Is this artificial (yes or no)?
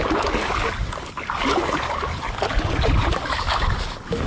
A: yes